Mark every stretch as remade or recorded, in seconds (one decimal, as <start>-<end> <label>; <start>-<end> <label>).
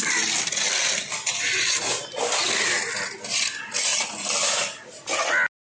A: 0.0-5.7 recorded